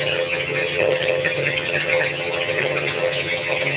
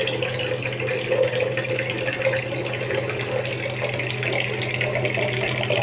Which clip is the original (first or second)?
second